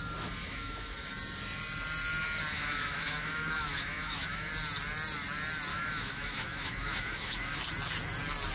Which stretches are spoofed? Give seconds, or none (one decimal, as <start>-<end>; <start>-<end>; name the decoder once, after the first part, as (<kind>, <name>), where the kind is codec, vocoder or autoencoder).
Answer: 0.4-1.1 (autoencoder, DAC-VAE); 2.5-4.5; 5.7-7.6